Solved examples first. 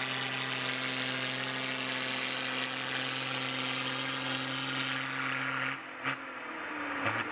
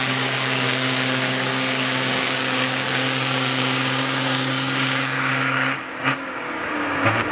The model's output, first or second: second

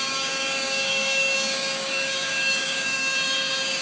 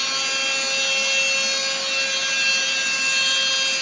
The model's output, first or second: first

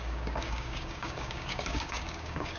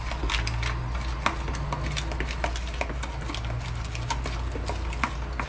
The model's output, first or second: first